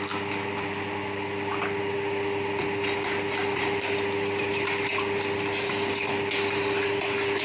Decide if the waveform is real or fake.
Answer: real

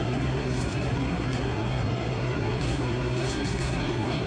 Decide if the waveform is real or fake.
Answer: fake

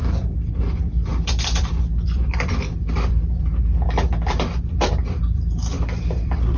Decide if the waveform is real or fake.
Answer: fake